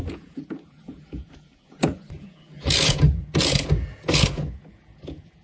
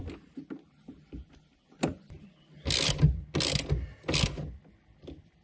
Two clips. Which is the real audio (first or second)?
second